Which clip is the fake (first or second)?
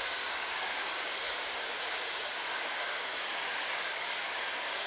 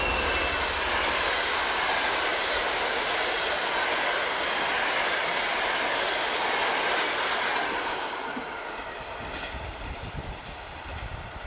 first